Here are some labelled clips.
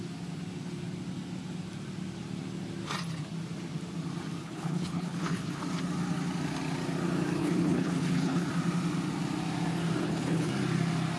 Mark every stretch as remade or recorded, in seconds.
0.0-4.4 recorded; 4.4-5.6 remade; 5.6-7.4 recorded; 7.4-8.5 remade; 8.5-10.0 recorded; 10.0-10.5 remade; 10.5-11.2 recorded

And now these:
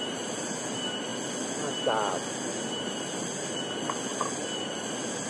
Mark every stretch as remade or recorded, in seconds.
0.0-5.3 recorded

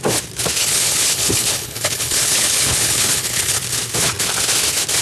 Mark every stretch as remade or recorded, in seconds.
0.0-0.6 recorded; 0.6-3.6 remade; 3.6-5.0 recorded

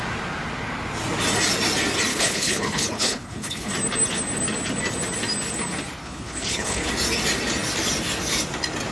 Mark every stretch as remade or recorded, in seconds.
0.0-2.1 recorded; 2.1-3.7 remade; 3.7-6.0 recorded; 6.0-6.9 remade; 6.9-8.9 recorded